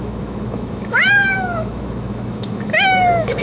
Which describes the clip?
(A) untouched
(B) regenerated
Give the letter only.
B